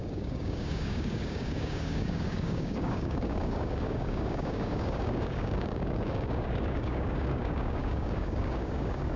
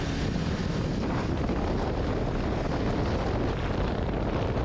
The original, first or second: second